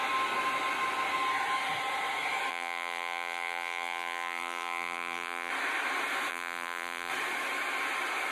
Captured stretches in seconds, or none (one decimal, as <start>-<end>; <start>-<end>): 0.0-2.5; 5.5-6.3; 7.1-8.3